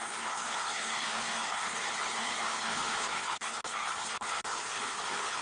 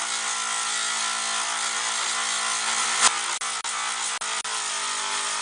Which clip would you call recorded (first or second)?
second